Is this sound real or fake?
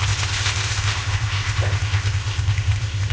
fake